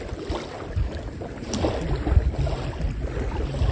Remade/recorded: recorded